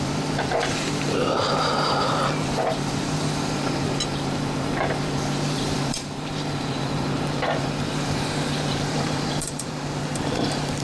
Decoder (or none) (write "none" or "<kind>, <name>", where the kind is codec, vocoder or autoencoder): vocoder, BigVGAN v2